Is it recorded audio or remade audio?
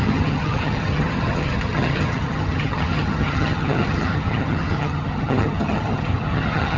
remade